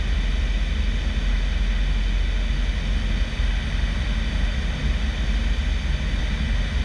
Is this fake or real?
real